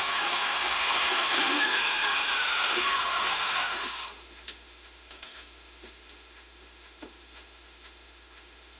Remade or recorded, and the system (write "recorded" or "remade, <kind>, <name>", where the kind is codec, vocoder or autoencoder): remade, autoencoder, DAC-VAE